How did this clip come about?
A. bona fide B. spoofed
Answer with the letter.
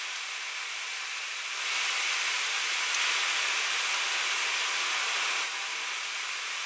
A